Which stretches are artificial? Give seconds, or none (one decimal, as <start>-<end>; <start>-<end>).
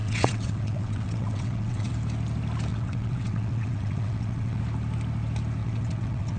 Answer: 0.0-1.9; 2.7-4.6; 5.6-6.4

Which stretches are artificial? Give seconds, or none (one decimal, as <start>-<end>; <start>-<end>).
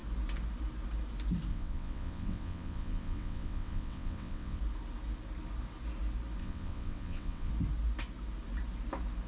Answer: 1.5-4.6; 6.4-7.5